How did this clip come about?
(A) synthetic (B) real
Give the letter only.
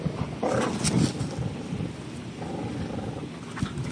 B